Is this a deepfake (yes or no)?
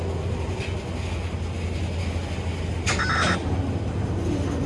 no